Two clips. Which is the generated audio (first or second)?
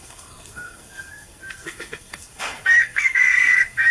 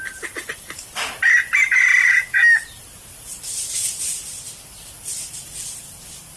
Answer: first